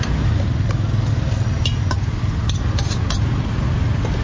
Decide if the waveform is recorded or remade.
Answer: recorded